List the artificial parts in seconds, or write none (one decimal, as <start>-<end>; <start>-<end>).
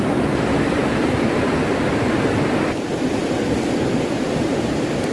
none